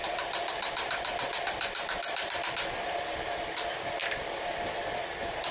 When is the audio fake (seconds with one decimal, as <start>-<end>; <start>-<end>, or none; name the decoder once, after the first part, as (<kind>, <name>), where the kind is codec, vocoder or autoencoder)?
0.0-3.0 (vocoder, BigVGAN v2); 4.0-5.0